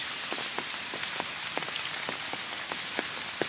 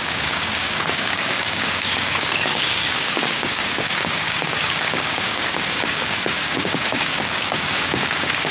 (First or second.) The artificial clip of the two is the second